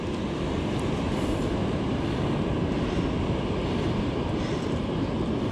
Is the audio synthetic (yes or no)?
no